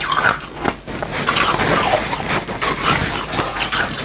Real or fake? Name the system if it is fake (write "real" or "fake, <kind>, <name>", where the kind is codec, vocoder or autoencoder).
real